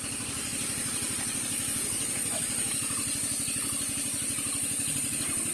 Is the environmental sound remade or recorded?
recorded